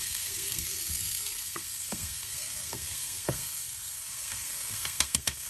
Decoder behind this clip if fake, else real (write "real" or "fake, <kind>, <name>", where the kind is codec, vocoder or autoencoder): fake, codec, SNAC